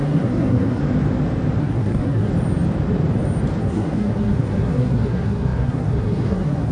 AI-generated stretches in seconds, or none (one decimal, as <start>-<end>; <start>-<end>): 0.0-0.8; 1.6-2.3; 3.6-6.7